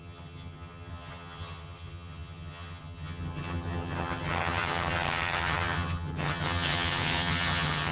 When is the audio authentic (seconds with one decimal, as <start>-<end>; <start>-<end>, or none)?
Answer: none